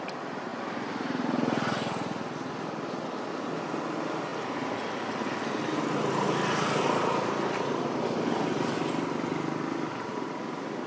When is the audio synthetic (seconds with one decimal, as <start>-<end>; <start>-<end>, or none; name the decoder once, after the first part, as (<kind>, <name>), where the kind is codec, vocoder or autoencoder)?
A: none

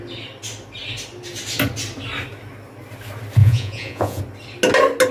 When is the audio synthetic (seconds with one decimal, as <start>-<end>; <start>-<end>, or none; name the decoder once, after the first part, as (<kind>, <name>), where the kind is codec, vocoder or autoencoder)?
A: 3.4-4.2 (vocoder, Vocos)

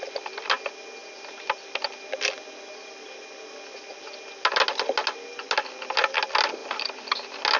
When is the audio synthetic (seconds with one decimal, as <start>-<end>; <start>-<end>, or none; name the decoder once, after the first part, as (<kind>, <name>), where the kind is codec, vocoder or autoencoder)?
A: none

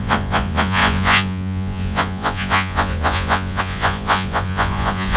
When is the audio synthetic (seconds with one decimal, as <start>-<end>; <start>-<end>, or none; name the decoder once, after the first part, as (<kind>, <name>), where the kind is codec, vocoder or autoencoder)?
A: 0.0-5.2 (vocoder, Vocos)

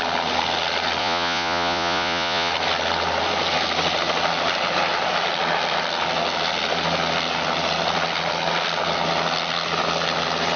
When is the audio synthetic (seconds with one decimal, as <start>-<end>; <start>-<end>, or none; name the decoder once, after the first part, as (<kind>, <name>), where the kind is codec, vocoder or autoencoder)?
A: 1.0-2.5 (vocoder, Vocos)